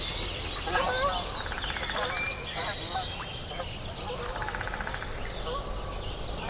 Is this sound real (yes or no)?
yes